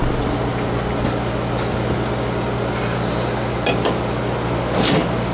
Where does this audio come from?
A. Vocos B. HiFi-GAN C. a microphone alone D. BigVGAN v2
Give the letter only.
C